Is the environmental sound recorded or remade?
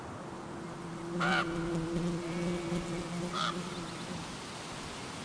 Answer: recorded